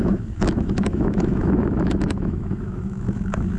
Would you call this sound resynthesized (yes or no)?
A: yes